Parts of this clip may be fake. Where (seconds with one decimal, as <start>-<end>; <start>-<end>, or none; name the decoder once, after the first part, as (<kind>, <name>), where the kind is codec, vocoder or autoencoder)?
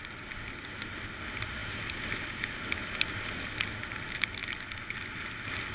none